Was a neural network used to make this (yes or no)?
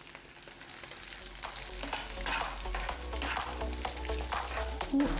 no